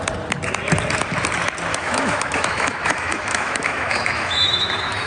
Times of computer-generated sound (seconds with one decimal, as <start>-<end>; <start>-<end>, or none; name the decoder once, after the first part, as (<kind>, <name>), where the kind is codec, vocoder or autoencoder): 1.7-5.1 (autoencoder, DAC-VAE)